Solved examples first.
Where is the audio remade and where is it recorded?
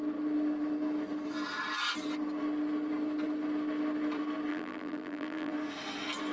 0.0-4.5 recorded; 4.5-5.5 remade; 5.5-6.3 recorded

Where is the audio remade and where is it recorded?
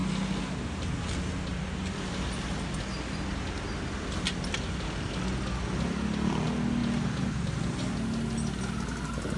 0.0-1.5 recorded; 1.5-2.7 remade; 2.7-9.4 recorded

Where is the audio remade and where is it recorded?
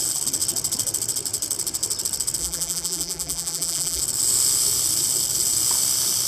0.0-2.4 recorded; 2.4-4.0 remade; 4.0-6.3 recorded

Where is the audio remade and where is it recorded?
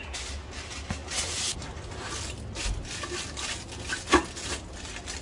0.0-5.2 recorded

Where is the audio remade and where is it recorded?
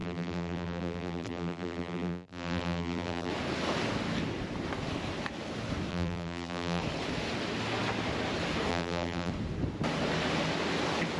0.0-3.3 remade; 3.3-5.9 recorded; 5.9-6.8 remade; 6.8-8.7 recorded; 8.7-9.3 remade; 9.3-11.2 recorded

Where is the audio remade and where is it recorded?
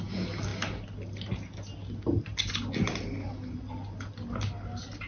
0.0-5.1 recorded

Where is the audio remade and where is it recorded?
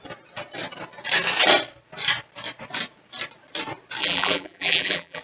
0.0-4.0 recorded; 4.0-5.2 remade